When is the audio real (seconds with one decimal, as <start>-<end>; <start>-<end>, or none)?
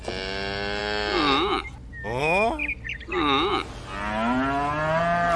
0.0-5.4